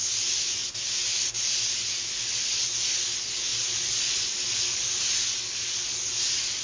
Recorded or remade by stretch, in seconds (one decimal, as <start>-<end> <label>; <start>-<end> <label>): 0.0-6.6 recorded